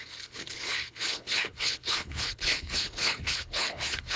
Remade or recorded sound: remade